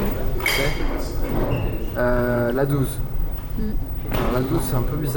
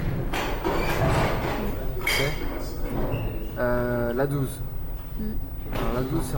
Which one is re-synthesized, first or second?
first